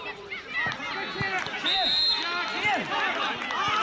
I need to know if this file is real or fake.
real